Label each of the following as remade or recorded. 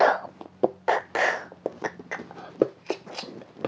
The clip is recorded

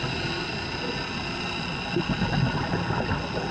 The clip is recorded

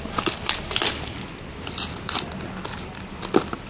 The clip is remade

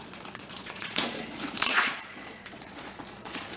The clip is remade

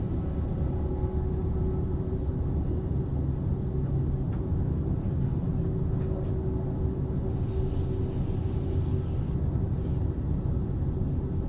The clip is recorded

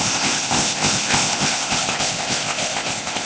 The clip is remade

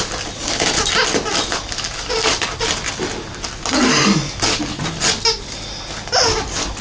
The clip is recorded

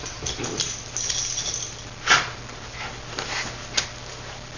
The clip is recorded